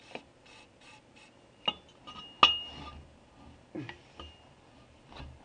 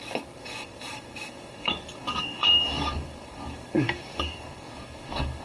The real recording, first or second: first